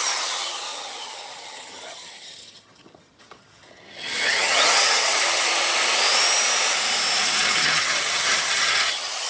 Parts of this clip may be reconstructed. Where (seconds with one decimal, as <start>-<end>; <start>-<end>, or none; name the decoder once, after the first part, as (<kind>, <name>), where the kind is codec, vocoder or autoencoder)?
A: 0.0-5.5 (vocoder, HiFi-GAN); 7.2-9.3